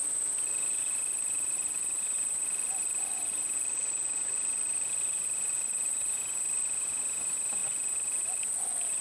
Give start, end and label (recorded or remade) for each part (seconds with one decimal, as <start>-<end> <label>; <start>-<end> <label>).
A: 0.0-9.0 recorded